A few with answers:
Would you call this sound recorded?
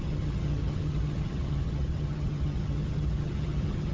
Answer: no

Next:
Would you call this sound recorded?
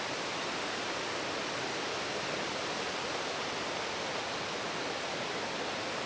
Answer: yes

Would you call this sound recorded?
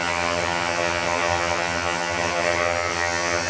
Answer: no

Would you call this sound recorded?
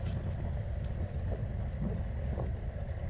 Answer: yes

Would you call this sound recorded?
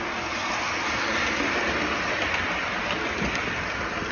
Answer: yes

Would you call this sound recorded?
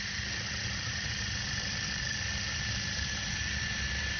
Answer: yes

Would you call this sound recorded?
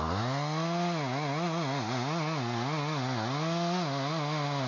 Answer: yes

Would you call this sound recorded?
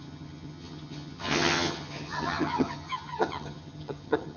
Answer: no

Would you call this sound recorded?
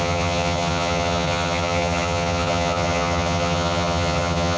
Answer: no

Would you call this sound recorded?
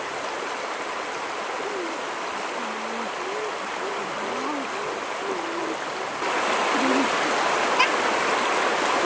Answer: yes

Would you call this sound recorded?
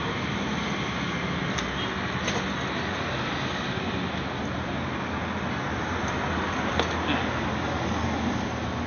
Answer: yes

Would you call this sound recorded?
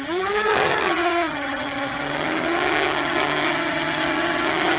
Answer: no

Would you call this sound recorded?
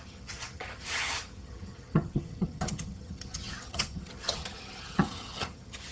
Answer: no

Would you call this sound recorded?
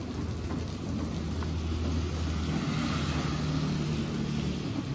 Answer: yes